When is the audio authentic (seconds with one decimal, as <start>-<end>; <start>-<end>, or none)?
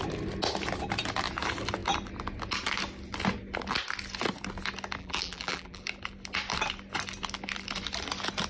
0.0-5.0; 5.8-8.5